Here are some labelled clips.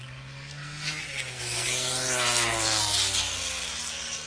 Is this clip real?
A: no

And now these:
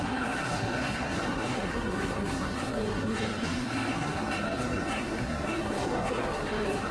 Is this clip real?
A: no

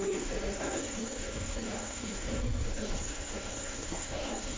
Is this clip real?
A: no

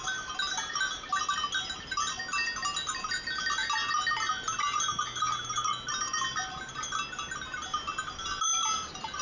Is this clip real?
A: yes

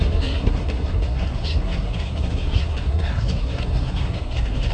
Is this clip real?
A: no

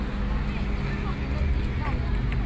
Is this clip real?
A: yes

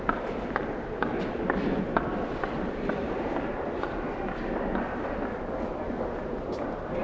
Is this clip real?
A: yes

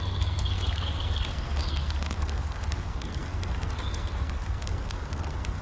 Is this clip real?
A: no